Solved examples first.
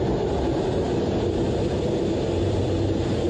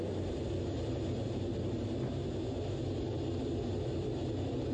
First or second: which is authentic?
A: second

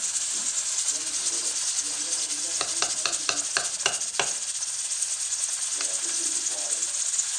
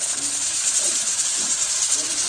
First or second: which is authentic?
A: first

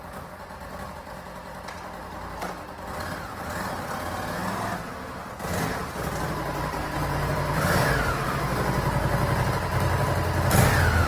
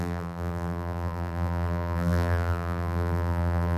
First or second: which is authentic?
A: first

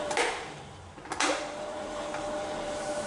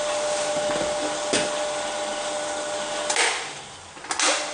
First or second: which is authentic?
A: second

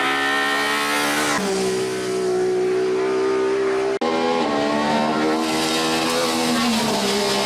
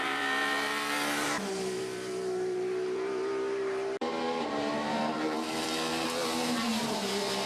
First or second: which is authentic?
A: first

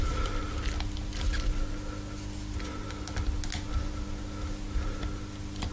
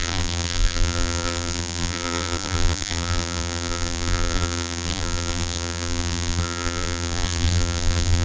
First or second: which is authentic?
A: first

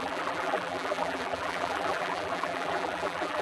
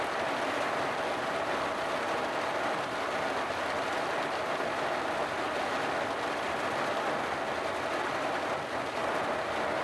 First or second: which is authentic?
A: second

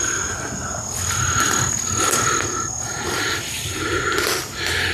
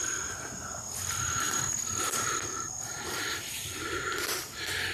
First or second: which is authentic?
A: first